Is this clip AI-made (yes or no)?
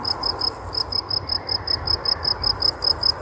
no